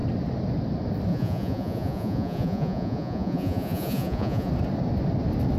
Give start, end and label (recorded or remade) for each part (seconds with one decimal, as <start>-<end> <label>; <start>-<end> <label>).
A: 0.0-1.1 recorded; 1.1-4.5 remade; 4.5-5.6 recorded